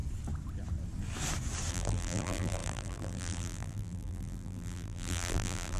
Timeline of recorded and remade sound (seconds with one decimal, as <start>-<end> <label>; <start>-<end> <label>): 0.0-1.7 recorded; 1.7-5.8 remade